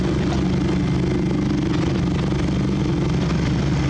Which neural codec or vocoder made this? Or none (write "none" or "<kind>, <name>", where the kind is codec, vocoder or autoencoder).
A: none